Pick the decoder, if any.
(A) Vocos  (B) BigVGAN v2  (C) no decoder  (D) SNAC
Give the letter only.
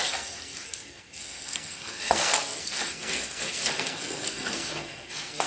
D